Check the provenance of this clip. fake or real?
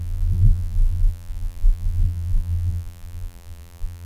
fake